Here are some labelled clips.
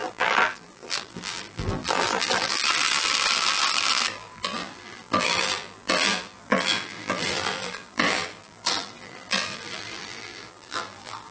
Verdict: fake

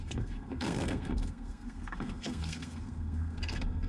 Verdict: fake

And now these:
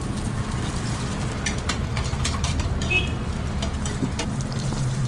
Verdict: fake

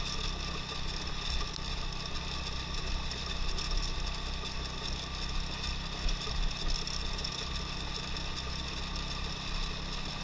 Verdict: real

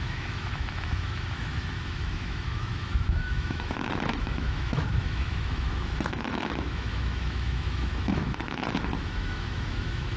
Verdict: fake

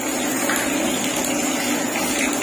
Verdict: real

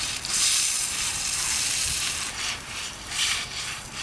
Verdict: fake